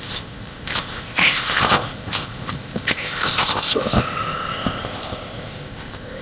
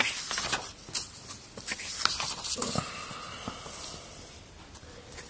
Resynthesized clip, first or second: first